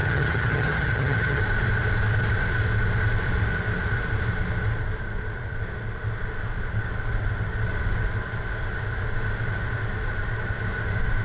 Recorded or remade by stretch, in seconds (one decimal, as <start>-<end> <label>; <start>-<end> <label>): 0.0-1.4 remade; 1.4-11.2 recorded